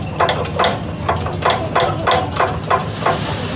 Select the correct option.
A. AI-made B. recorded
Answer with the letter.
B